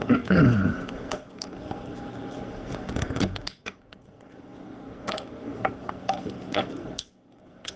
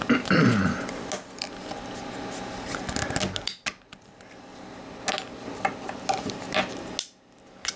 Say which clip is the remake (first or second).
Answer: first